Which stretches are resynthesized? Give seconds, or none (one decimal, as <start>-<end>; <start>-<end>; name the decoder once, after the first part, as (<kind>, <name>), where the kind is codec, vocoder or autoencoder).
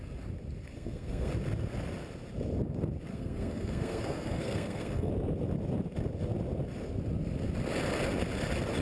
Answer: 0.7-1.3 (codec, SNAC); 3.1-5.1